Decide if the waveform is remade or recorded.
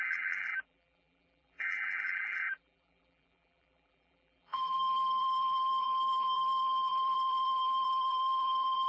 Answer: remade